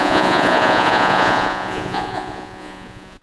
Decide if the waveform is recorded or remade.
remade